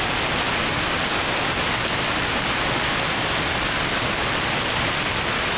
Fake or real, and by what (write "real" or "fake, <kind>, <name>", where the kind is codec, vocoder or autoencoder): real